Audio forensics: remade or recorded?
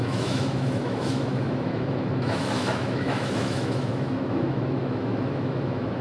remade